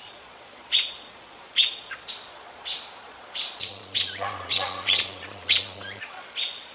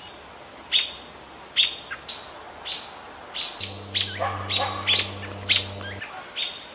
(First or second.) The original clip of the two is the second